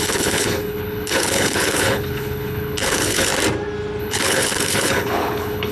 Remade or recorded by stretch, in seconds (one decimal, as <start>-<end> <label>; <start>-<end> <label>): 0.0-3.3 remade; 3.3-4.0 recorded; 4.0-5.7 remade